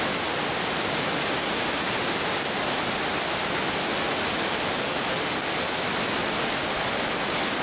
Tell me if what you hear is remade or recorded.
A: recorded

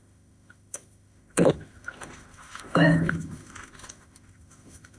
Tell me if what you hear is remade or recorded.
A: remade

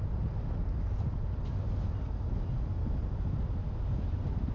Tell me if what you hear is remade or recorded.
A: recorded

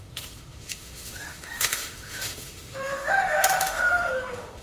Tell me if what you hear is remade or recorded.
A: remade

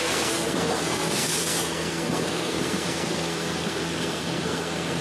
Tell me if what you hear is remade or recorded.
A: remade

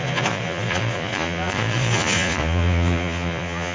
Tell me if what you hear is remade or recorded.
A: remade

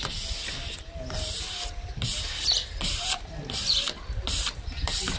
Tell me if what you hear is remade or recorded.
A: recorded